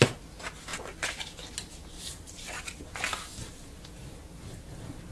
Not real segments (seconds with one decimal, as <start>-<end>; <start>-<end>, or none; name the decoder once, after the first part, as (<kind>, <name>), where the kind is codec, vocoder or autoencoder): none